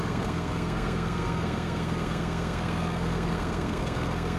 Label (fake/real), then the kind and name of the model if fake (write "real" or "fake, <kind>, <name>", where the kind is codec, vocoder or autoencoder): fake, codec, SNAC